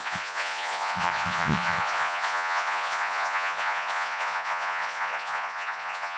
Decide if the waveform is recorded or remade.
remade